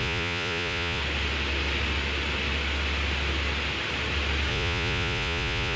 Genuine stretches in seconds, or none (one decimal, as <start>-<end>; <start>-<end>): 1.0-4.5